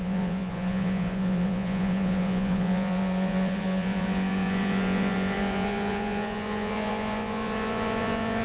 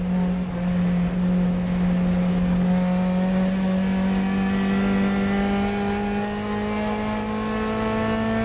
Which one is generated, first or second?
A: first